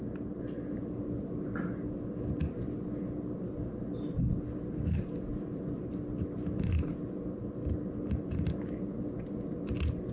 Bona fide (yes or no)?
yes